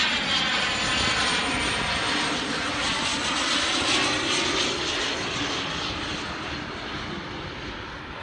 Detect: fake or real real